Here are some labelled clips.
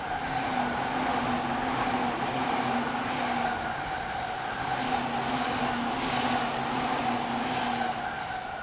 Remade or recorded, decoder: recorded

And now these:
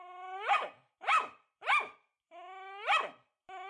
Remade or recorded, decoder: recorded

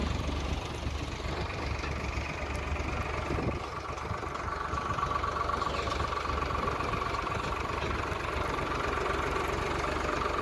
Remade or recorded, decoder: recorded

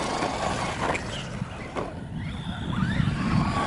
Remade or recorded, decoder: recorded